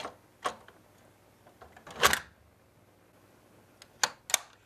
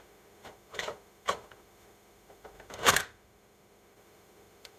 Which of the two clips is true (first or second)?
first